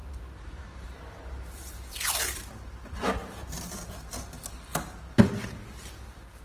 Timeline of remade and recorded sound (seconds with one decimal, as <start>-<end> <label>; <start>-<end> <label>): 0.0-6.4 remade